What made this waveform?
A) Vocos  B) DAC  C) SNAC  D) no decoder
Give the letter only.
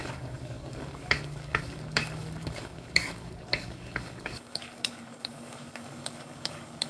B